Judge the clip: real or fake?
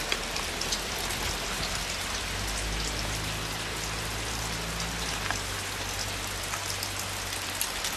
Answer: real